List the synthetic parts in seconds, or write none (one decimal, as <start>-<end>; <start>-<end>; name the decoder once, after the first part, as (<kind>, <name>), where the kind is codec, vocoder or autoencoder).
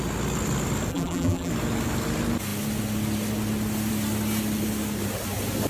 0.9-1.5 (vocoder, BigVGAN v2)